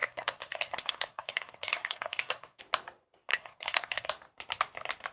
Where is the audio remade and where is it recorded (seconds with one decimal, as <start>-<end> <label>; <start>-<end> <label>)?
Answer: 0.0-2.6 remade; 2.6-3.3 recorded; 3.3-4.1 remade; 4.1-5.1 recorded